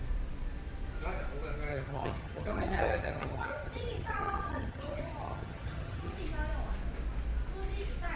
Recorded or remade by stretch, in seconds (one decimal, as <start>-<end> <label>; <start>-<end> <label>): 0.0-1.7 recorded; 1.7-6.2 remade; 6.2-8.2 recorded